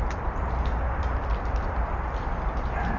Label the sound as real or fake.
fake